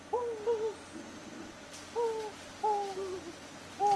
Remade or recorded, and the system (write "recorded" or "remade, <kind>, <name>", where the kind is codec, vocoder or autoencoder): recorded